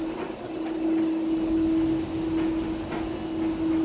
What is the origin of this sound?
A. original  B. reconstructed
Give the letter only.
A